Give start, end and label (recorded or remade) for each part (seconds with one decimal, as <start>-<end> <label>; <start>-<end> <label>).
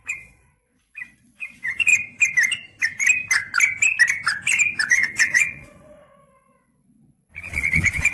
0.0-1.9 remade; 1.9-4.9 recorded; 4.9-8.1 remade